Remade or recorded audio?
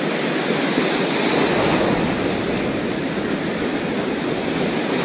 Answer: recorded